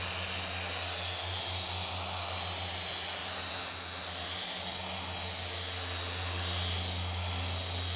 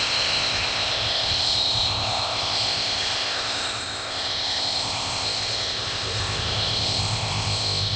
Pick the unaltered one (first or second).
first